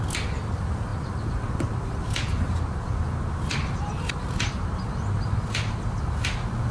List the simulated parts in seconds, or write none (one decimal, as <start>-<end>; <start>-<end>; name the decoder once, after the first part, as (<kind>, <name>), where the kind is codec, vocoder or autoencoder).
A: none